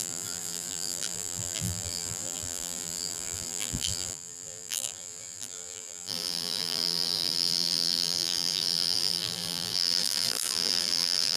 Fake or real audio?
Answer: fake